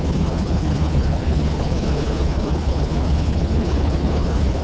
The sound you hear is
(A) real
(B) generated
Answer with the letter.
B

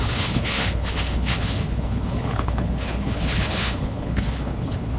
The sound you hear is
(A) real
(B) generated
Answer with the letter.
B